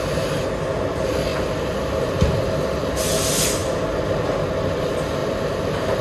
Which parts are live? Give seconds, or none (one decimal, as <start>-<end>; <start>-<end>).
0.0-6.0

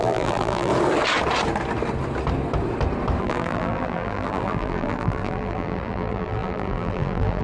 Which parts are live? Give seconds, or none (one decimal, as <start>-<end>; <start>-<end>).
0.7-3.2

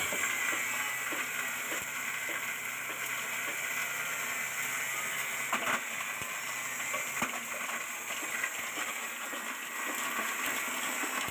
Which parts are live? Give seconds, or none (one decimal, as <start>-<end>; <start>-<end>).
0.0-1.7; 2.8-11.3

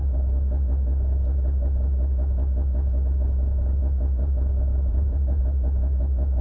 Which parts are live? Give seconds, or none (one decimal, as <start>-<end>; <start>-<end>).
0.0-4.9; 5.4-6.4

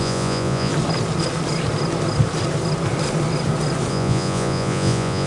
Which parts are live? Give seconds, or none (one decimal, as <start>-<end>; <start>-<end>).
0.7-3.9

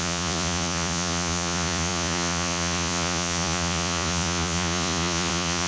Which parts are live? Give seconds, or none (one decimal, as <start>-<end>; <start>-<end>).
none

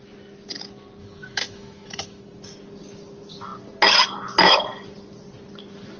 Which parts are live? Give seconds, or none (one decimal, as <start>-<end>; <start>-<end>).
0.0-1.0; 2.2-6.0